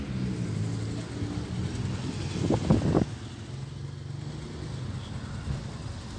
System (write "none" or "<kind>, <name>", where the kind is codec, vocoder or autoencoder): none